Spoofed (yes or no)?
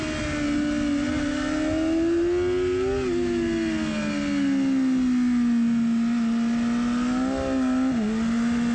no